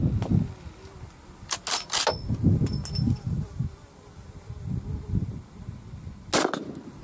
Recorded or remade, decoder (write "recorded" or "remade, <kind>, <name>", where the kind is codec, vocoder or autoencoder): recorded